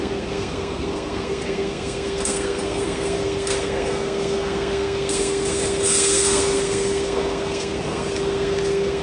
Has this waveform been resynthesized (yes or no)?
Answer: yes